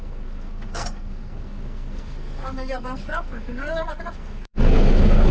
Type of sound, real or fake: fake